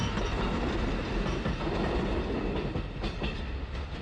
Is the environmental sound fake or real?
real